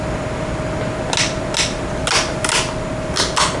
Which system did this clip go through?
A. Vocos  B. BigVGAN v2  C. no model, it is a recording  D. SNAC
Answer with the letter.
C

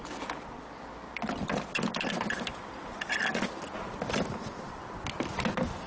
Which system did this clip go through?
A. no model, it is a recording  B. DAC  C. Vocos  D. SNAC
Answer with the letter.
A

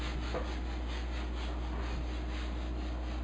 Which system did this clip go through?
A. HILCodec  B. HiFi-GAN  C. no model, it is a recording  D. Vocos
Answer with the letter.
C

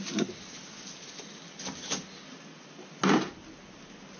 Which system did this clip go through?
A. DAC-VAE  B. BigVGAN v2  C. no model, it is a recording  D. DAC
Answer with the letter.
C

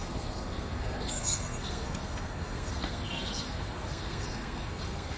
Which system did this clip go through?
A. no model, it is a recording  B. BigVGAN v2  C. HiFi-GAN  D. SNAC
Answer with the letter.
D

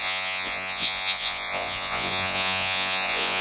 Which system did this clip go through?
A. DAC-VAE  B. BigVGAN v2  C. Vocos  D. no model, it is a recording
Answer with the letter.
C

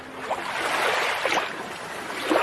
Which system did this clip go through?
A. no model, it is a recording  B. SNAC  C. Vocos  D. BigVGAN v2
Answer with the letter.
A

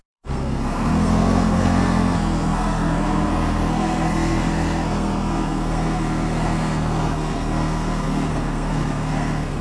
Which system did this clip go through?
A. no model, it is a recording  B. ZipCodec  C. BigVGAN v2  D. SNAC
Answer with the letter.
D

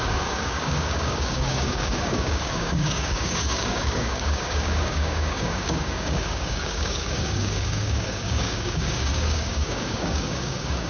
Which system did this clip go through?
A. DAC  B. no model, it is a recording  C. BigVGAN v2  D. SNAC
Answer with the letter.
A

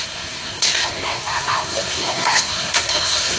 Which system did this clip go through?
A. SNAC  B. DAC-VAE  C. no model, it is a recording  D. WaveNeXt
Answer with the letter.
A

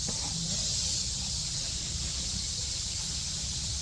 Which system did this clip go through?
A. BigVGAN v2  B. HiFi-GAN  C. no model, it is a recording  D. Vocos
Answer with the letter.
C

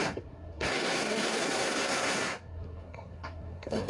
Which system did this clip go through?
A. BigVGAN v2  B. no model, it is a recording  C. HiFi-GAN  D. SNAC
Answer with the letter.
D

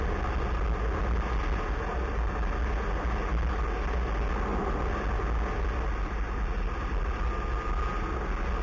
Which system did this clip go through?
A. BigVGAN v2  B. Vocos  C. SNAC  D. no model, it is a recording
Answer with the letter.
D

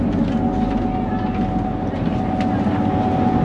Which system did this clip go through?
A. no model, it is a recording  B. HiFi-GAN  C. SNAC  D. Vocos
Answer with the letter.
A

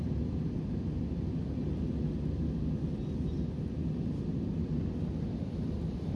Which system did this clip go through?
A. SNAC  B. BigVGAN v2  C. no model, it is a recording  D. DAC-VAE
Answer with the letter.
C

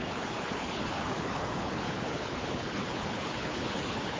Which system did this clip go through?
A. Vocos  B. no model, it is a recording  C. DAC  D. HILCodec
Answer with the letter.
D